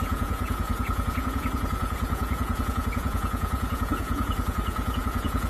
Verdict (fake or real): fake